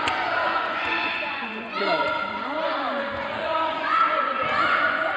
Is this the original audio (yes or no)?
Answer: no